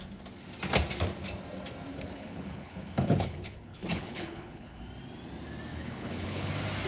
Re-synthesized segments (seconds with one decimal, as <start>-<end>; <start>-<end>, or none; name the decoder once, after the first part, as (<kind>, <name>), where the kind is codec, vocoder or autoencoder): 1.9-4.8 (codec, HILCodec); 5.7-6.5